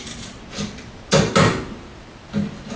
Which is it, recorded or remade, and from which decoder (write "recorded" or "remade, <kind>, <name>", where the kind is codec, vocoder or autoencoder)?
recorded